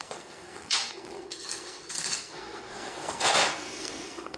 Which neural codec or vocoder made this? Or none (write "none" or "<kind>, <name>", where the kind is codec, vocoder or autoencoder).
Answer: codec, SNAC